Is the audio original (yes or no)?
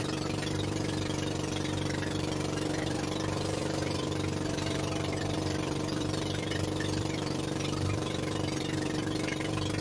no